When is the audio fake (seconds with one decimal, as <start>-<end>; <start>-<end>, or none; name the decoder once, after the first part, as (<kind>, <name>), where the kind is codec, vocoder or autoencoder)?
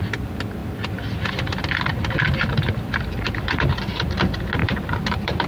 4.6-5.5 (vocoder, BigVGAN v2)